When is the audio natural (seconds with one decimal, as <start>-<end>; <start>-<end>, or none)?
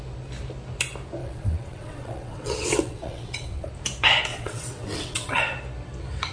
0.0-1.2; 3.7-4.3; 5.4-6.3